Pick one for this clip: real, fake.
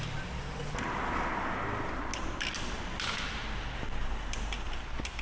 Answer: real